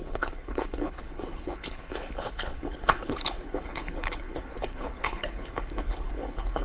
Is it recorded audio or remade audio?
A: remade